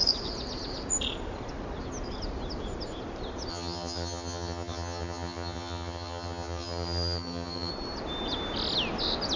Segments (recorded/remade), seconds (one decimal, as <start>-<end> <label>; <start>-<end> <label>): 0.0-3.5 recorded; 3.5-7.7 remade; 7.7-9.4 recorded